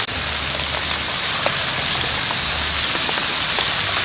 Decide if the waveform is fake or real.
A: real